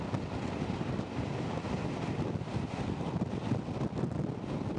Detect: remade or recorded recorded